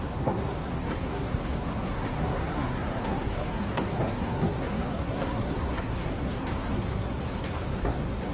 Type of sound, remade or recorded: remade